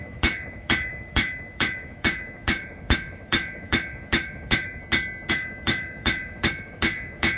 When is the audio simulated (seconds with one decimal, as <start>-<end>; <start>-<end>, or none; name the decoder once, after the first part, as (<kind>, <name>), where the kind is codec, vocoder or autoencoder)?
0.0-4.8 (autoencoder, DAC-VAE); 5.3-7.4